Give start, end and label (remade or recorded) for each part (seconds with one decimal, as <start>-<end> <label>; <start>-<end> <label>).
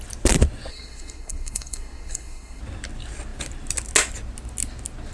0.0-0.7 recorded; 0.7-2.6 remade; 2.6-5.1 recorded